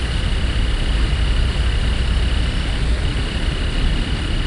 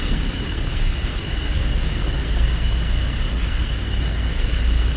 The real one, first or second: first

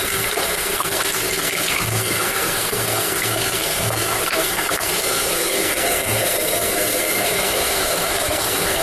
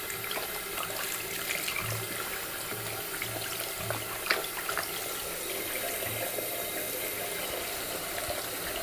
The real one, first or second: second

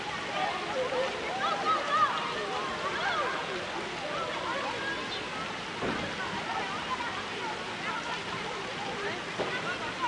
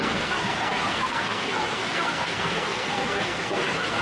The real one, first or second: first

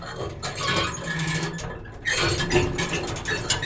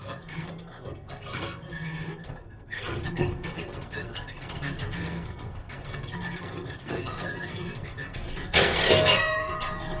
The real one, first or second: first